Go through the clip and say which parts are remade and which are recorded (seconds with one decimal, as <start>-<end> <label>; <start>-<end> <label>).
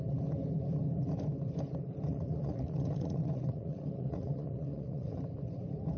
0.0-2.1 recorded; 2.1-5.2 remade; 5.2-6.0 recorded